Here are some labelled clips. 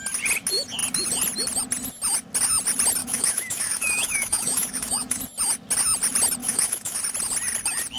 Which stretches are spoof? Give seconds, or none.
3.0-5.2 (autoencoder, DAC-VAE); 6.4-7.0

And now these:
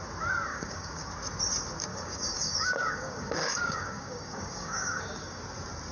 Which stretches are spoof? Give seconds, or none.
0.5-1.1 (codec, DAC); 1.9-5.4

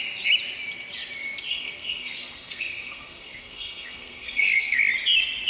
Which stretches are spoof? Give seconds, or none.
1.5-4.8 (codec, SNAC)

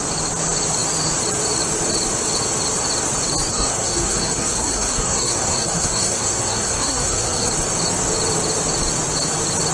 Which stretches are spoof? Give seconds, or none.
3.5-7.5 (codec, SNAC)

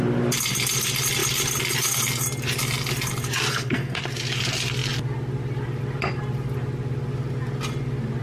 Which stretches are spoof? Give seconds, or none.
3.5-4.0 (codec, SNAC)

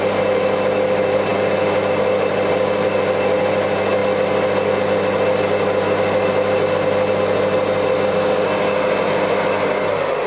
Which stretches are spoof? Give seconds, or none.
none

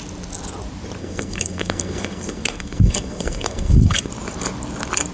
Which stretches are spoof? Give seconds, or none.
1.0-4.1 (codec, SNAC)